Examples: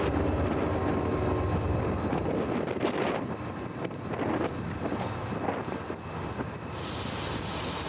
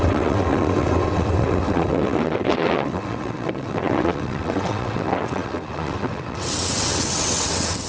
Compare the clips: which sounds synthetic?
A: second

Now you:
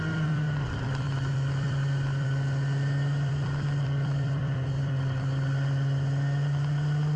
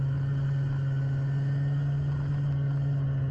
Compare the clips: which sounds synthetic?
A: first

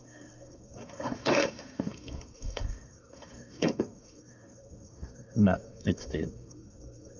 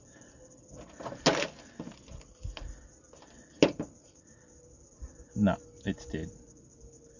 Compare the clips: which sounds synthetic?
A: first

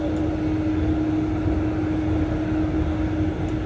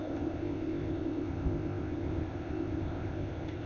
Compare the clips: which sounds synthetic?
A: second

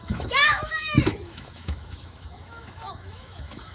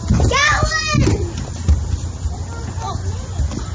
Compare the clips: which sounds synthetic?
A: first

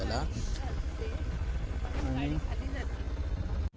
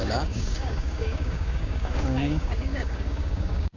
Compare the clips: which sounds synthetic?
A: second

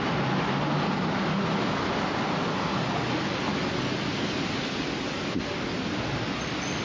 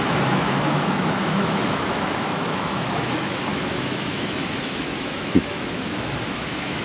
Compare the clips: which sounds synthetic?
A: second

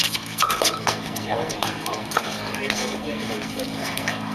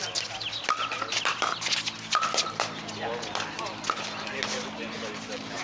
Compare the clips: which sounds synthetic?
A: first